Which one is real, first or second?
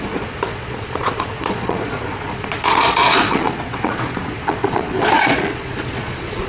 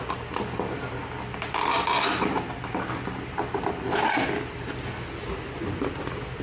second